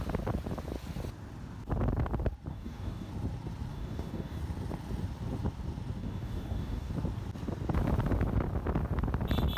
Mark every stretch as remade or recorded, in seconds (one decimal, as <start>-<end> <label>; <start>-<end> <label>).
0.0-2.5 recorded; 2.5-3.1 remade; 3.1-3.7 recorded; 3.7-4.4 remade; 4.4-6.0 recorded; 6.0-6.9 remade; 6.9-9.6 recorded